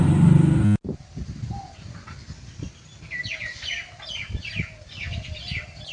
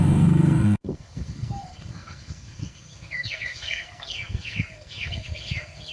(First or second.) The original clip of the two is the first